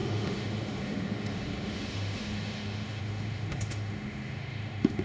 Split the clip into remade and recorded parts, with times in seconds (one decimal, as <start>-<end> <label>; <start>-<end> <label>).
0.0-5.0 remade

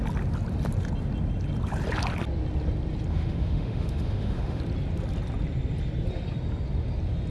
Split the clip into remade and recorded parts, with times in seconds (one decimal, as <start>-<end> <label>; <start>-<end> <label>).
0.0-3.1 recorded; 3.1-4.6 remade; 4.6-7.3 recorded

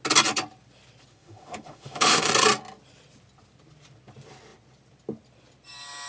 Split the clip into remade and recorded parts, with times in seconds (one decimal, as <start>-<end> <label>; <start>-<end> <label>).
0.0-1.1 recorded; 1.1-2.3 remade; 2.3-6.1 recorded

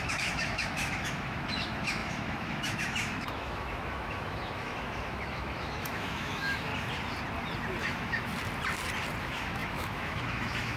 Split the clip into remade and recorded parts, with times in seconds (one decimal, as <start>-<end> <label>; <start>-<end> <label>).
0.0-6.7 remade; 6.7-7.8 recorded; 7.8-8.3 remade; 8.3-9.2 recorded; 9.2-10.8 remade

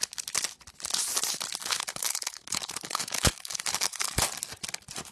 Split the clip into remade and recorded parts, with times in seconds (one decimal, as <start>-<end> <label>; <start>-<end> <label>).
0.0-1.6 recorded; 1.6-4.2 remade; 4.2-5.1 recorded